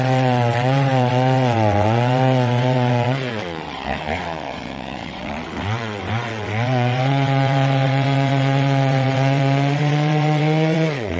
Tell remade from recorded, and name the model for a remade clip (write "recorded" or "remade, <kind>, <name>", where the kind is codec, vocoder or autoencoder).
remade, vocoder, WaveNeXt